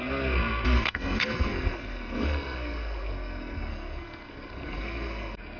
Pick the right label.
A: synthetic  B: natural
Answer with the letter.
A